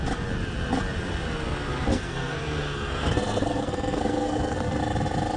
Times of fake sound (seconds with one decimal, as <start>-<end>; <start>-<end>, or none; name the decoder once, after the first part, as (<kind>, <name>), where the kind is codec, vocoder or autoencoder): 1.9-4.8 (codec, SNAC)